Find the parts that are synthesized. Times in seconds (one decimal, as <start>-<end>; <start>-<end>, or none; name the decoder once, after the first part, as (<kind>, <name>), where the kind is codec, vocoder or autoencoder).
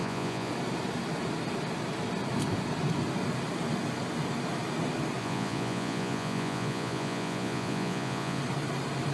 0.0-0.5 (vocoder, Vocos); 5.2-8.4